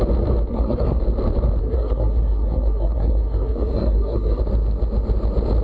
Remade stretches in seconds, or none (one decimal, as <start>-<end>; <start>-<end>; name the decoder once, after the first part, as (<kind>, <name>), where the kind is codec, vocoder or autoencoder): 0.5-1.0 (codec, SNAC); 1.6-4.4